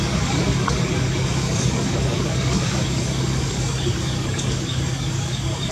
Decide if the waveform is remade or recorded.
remade